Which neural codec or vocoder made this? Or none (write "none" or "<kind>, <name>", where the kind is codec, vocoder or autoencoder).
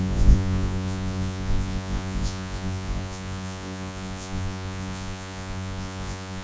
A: vocoder, Vocos